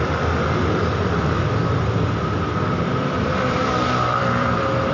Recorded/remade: remade